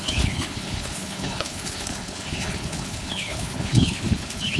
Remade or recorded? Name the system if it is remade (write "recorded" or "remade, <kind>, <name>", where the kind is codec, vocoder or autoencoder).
remade, codec, HILCodec